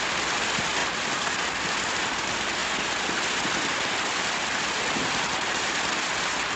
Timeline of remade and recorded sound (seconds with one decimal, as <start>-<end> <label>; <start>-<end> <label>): 0.0-6.6 recorded